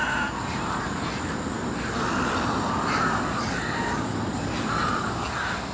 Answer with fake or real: real